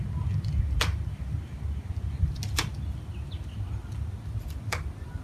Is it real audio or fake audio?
real